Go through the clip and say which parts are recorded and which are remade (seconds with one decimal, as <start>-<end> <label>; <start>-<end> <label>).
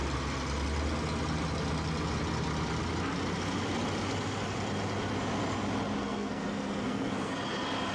0.0-6.0 recorded; 6.0-7.3 remade; 7.3-7.9 recorded